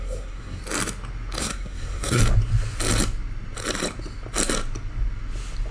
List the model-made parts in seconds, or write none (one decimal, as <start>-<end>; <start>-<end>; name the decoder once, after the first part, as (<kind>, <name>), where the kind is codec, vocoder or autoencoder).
0.0-0.6 (codec, SNAC); 1.4-2.2